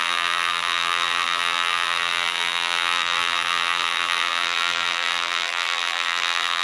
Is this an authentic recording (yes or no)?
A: no